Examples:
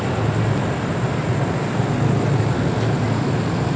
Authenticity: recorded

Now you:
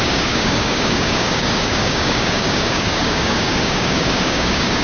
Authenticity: remade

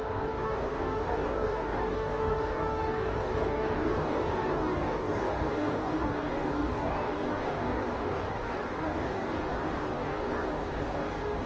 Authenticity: remade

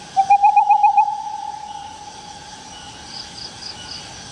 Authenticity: recorded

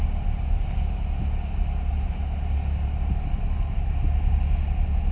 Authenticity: recorded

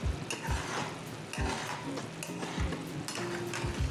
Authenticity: recorded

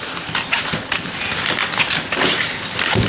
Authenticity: recorded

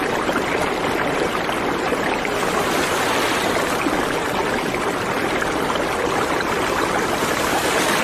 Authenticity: recorded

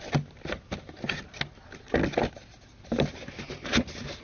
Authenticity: recorded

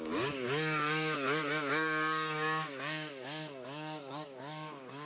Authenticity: remade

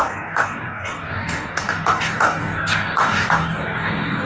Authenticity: remade